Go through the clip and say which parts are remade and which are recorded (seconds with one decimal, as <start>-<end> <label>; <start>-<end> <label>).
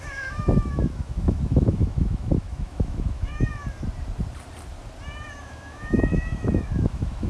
0.0-3.6 remade; 3.6-5.4 recorded; 5.4-7.3 remade